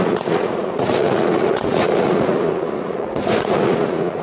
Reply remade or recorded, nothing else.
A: remade